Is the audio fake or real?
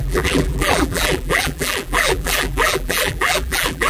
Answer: fake